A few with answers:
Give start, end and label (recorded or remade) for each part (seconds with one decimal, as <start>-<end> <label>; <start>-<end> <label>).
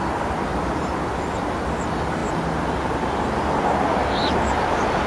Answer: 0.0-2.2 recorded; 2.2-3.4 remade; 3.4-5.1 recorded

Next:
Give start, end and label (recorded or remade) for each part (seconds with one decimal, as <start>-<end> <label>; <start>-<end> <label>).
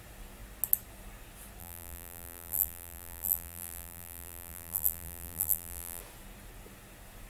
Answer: 0.0-1.6 recorded; 1.6-6.0 remade; 6.0-7.3 recorded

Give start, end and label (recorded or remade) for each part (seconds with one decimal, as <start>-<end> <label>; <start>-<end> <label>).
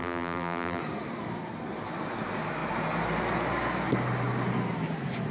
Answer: 0.0-0.8 remade; 0.8-5.3 recorded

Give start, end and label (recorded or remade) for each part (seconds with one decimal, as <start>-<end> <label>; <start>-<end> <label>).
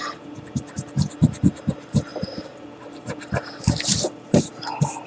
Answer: 0.0-5.1 remade